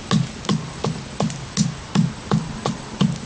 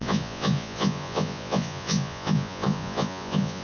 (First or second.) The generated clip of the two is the second